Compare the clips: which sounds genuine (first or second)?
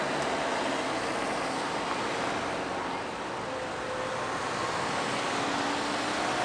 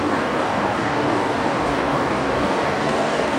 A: first